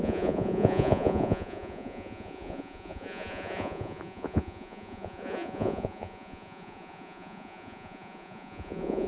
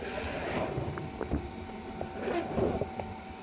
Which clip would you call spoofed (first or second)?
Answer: first